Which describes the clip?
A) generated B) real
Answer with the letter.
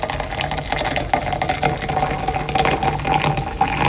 B